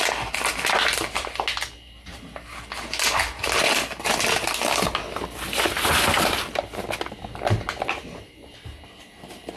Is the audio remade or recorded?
recorded